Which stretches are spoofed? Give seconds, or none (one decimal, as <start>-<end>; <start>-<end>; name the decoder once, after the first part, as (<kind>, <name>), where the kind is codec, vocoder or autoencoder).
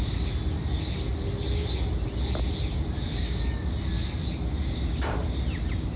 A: none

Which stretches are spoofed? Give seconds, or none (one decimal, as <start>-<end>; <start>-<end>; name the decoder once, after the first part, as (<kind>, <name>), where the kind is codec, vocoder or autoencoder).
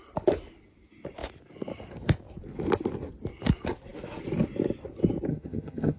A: 5.3-6.0 (vocoder, HiFi-GAN)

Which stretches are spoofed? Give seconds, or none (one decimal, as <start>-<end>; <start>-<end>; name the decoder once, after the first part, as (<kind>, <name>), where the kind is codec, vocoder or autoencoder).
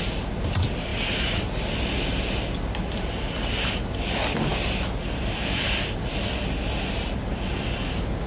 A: none